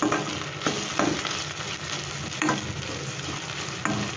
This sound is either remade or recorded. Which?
recorded